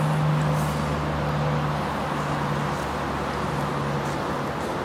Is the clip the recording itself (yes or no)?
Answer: yes